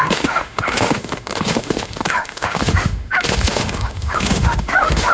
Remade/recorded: remade